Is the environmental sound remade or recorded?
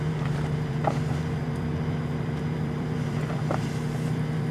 remade